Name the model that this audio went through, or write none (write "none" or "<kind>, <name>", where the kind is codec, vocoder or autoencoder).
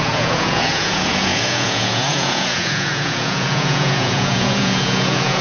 vocoder, Vocos